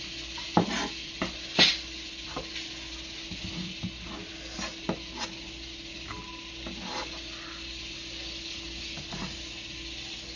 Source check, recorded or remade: recorded